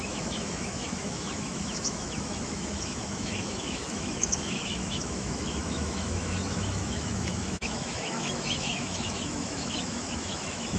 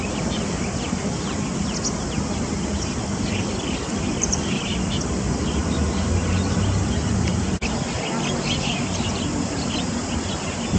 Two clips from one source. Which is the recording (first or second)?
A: second